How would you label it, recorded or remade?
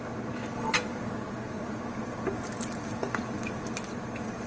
recorded